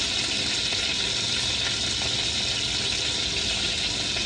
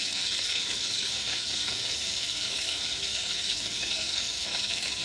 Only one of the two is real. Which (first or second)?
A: first